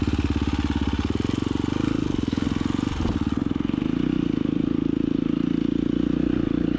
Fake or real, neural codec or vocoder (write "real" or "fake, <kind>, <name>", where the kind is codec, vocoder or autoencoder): real